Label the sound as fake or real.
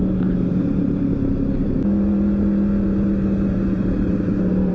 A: real